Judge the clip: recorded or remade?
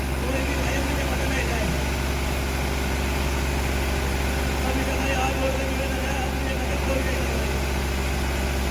recorded